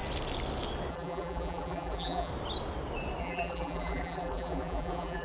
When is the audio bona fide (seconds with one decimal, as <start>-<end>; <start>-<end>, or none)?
0.0-0.9; 2.3-3.2